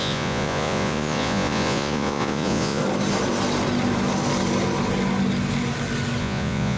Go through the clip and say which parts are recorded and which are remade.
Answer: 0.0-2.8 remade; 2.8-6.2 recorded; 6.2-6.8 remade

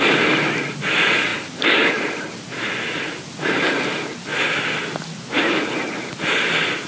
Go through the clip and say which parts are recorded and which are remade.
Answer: 0.0-6.9 recorded

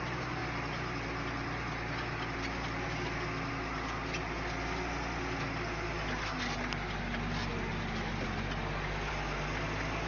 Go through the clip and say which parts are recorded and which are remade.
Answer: 0.0-10.1 recorded

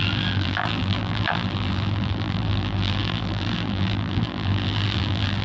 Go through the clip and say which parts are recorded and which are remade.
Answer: 0.0-5.4 remade

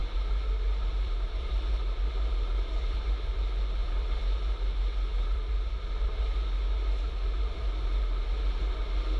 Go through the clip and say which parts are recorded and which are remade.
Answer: 0.0-3.4 remade; 3.4-3.8 recorded; 3.8-8.6 remade; 8.6-9.2 recorded